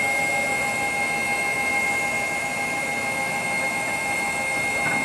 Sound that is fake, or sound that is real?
real